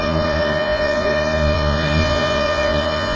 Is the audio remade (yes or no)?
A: yes